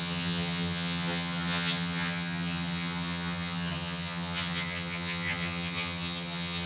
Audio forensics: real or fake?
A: fake